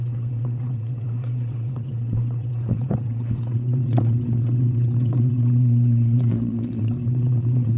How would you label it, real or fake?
fake